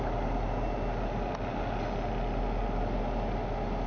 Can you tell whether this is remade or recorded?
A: recorded